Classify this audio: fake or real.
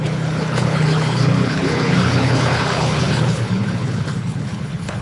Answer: fake